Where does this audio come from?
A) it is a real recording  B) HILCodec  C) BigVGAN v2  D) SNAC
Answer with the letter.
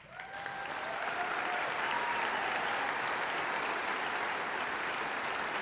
C